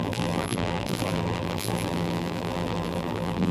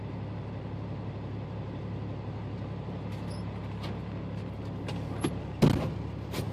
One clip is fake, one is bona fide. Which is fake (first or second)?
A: first